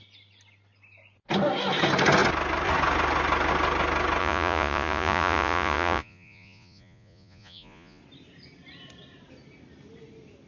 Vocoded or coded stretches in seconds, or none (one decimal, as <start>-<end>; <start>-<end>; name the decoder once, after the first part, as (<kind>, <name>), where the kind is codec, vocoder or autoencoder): 4.2-8.0 (vocoder, Vocos)